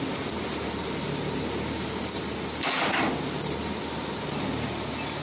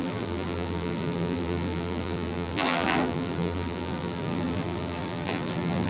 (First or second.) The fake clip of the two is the second